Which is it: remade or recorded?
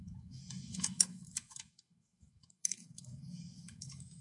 remade